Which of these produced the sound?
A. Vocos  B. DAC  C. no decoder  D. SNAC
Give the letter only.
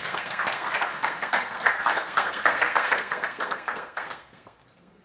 D